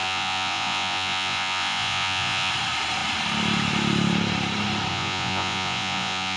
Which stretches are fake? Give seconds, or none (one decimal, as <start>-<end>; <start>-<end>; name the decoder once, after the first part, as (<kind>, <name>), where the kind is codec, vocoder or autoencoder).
0.0-2.5 (vocoder, Vocos); 4.9-6.4